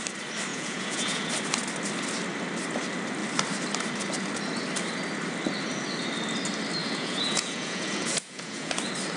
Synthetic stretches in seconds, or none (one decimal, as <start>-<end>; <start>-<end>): 0.5-1.3; 6.8-8.7

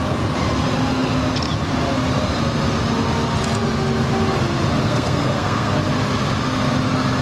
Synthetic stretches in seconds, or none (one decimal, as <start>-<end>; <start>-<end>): 4.8-5.8

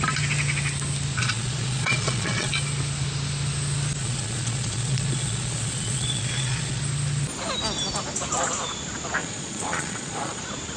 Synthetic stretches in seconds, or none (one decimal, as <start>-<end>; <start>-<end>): 1.2-2.5; 4.0-6.8; 9.2-10.4

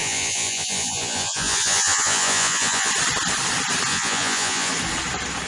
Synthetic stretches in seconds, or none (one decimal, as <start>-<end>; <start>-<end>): 0.0-2.9; 3.9-4.7